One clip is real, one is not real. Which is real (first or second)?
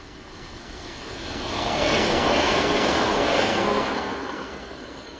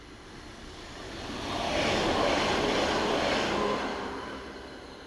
second